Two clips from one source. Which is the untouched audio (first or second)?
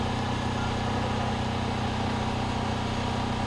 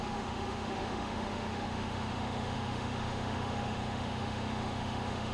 first